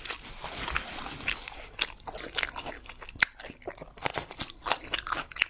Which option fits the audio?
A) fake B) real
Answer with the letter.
B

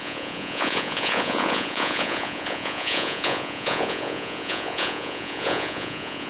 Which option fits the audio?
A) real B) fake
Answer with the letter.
B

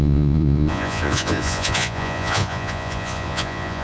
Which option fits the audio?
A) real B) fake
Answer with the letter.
B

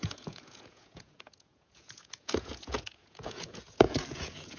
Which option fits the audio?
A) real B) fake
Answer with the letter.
B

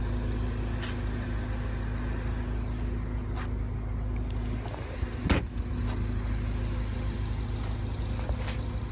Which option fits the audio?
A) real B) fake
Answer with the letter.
A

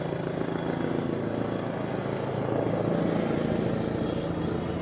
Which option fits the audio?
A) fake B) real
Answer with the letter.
B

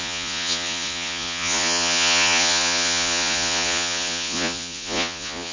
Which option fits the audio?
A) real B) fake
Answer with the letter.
B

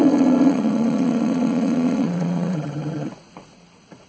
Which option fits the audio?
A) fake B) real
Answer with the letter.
A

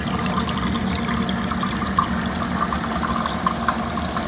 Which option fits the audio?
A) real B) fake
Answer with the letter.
A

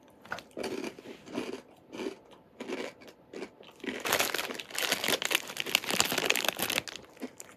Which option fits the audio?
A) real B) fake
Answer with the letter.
A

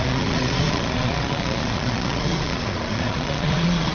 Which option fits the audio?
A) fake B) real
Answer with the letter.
A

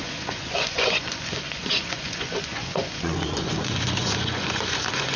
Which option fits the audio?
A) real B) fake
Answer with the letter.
B